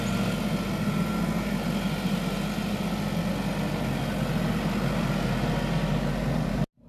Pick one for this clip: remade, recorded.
recorded